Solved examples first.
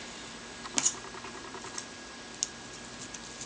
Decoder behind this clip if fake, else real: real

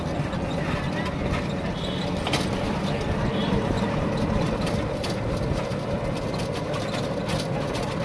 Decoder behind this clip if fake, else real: real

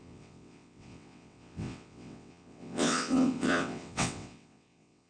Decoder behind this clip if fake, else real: fake, vocoder, WaveNeXt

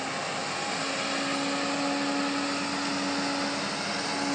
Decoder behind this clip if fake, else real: real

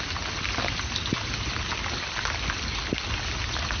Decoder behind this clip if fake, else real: real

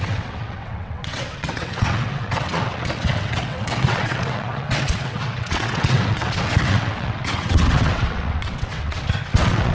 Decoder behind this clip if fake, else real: fake, vocoder, WaveNeXt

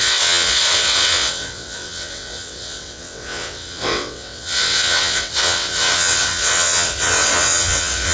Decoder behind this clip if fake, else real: fake, vocoder, WaveNeXt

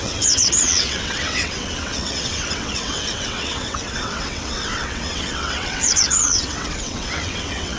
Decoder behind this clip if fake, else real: fake, vocoder, WaveNeXt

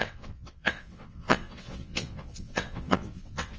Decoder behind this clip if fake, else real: fake, vocoder, WaveNeXt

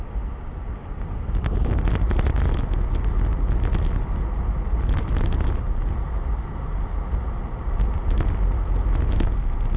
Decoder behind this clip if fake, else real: real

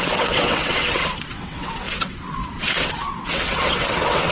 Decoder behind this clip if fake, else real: fake, vocoder, WaveNeXt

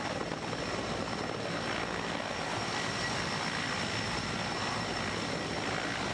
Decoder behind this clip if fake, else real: real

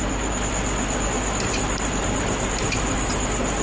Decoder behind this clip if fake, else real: real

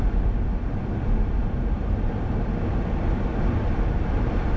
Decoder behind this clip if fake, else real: real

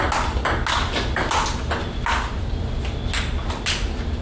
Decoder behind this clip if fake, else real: real